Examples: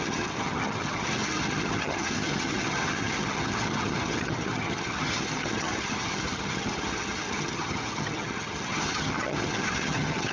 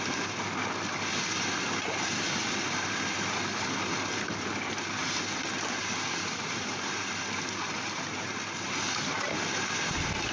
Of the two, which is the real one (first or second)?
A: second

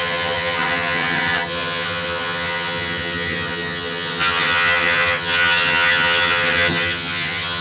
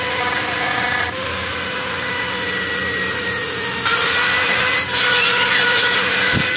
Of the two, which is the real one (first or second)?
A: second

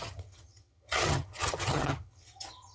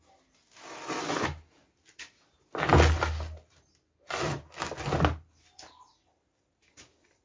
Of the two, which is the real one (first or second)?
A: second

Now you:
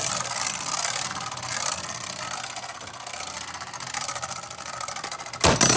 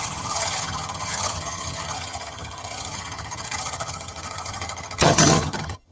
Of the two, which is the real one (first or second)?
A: first